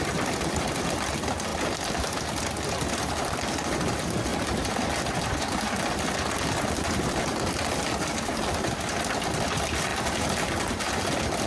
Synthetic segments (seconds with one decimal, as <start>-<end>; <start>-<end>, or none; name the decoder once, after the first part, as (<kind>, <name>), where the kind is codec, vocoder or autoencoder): 0.0-1.5 (vocoder, BigVGAN v2); 3.1-9.9; 10.6-11.5